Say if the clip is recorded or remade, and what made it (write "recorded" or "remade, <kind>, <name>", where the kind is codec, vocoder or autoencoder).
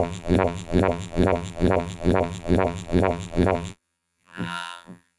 remade, vocoder, BigVGAN v2